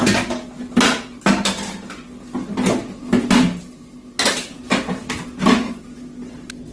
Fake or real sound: real